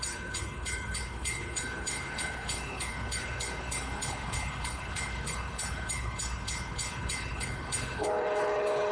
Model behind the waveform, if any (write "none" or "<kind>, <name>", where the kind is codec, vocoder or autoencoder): codec, HILCodec